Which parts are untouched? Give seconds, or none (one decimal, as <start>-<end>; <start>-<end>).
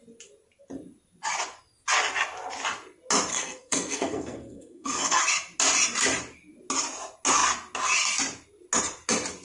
0.0-3.3; 5.2-9.4